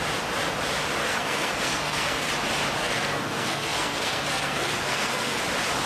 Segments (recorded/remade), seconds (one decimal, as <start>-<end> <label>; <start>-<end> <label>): 0.0-1.0 recorded; 1.0-2.3 remade; 2.3-2.8 recorded; 2.8-5.4 remade; 5.4-5.9 recorded